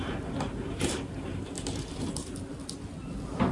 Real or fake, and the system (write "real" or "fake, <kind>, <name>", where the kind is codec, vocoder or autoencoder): fake, vocoder, BigVGAN v2